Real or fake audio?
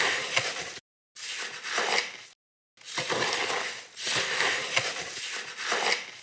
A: real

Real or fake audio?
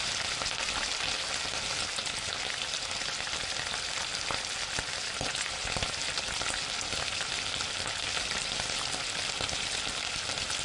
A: real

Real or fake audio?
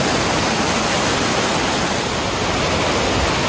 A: real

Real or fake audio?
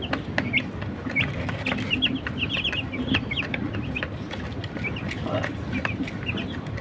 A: real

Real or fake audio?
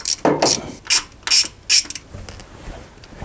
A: real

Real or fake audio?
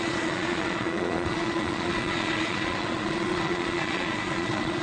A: fake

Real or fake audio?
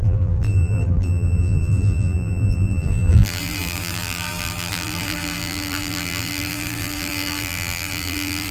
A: fake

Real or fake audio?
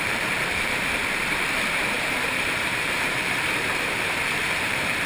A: fake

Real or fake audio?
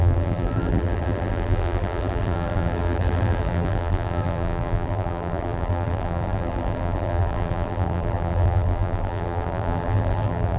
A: fake